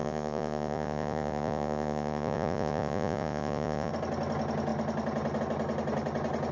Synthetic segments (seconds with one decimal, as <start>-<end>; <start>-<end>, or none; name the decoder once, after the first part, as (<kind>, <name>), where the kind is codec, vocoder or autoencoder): 0.0-3.9 (vocoder, Vocos)